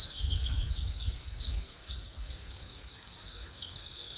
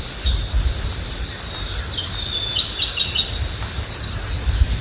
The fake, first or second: first